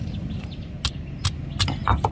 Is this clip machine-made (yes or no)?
no